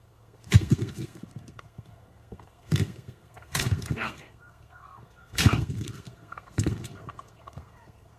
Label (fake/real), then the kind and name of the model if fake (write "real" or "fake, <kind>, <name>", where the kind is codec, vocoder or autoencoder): fake, codec, SNAC